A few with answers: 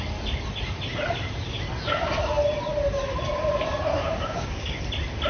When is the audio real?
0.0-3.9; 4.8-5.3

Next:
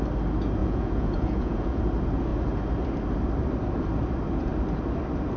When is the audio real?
0.0-0.6; 1.8-5.4

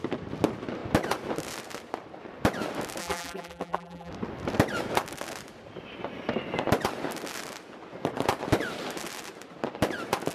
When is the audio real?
0.0-3.0; 4.1-10.3

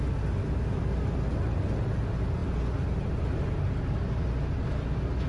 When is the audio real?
0.0-5.3

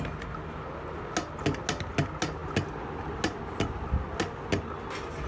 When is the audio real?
0.0-5.3

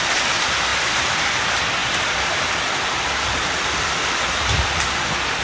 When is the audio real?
1.8-5.0